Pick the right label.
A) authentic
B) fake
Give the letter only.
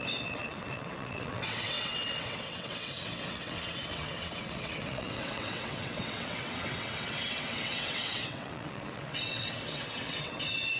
B